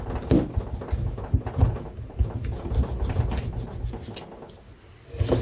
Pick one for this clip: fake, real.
real